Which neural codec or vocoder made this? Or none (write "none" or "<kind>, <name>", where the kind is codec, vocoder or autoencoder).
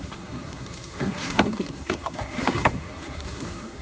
codec, SNAC